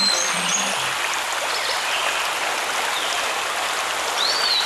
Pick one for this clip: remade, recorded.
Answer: recorded